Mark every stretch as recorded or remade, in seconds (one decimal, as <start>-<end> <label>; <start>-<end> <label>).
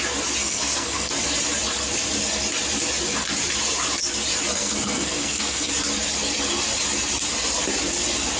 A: 0.0-0.4 recorded; 0.4-1.1 remade; 1.1-4.5 recorded; 4.5-5.7 remade; 5.7-8.4 recorded